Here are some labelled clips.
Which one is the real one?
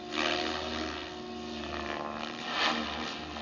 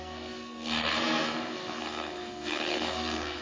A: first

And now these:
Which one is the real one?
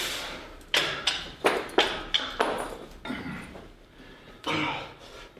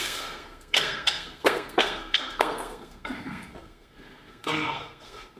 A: first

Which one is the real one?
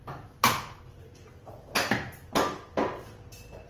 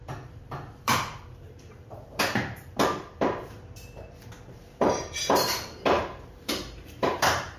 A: first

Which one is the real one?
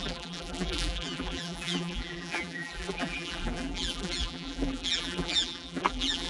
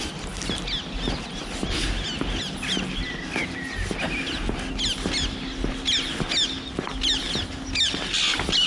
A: second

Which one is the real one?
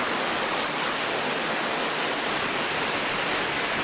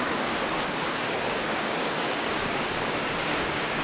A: first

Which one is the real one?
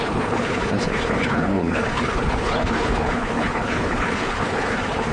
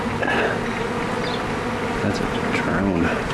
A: second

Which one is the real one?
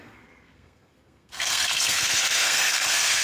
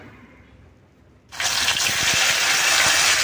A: second